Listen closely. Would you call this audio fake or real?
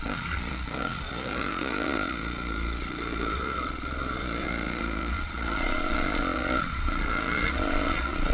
fake